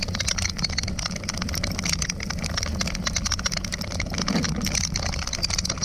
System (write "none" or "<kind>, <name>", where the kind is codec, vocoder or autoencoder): none